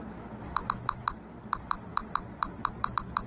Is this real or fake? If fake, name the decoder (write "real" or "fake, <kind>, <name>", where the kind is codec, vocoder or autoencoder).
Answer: real